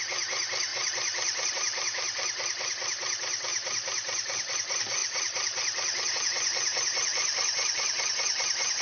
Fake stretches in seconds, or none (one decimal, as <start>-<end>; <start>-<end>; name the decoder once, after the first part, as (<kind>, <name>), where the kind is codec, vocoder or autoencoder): 0.7-1.5 (vocoder, BigVGAN v2); 3.5-4.5; 5.0-6.1; 7.2-8.1